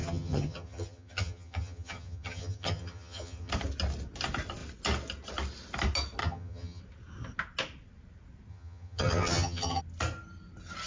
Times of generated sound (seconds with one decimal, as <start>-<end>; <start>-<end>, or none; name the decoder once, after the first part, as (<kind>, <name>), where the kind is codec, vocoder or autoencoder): 0.0-3.5 (vocoder, HiFi-GAN); 6.2-6.8; 8.5-9.8